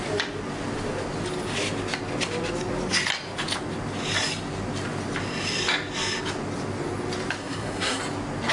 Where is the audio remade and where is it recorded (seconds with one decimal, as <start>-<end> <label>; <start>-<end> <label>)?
0.0-7.4 recorded; 7.4-8.0 remade; 8.0-8.5 recorded